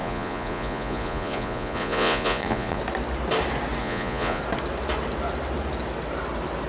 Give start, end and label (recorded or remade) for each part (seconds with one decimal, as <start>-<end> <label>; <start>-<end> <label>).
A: 0.0-2.8 remade; 2.8-3.8 recorded; 3.8-4.4 remade; 4.4-6.7 recorded